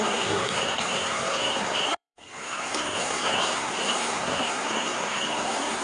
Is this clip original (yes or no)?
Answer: no